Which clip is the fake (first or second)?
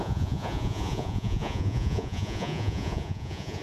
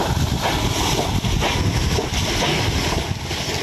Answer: first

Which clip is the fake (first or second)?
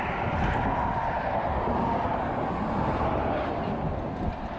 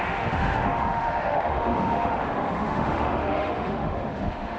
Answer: second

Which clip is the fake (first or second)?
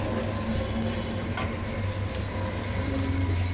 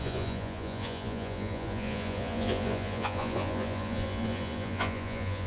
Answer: second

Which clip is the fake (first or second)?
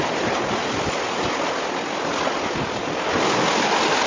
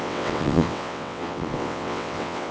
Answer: second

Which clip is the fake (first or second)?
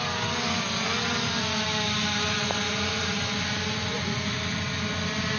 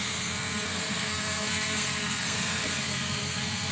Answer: second